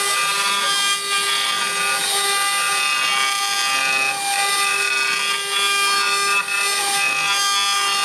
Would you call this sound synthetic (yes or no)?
no